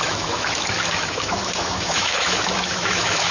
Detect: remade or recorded remade